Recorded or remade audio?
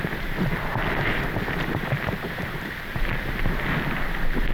recorded